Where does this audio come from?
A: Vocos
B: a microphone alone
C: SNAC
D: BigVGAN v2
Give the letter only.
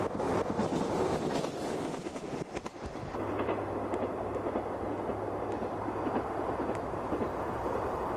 B